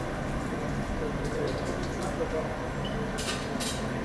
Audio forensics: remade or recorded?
recorded